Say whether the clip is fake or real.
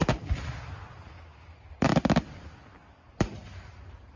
real